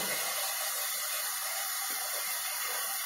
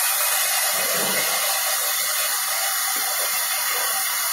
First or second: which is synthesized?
first